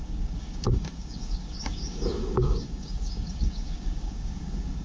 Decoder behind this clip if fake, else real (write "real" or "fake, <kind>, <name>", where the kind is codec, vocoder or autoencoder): fake, codec, DAC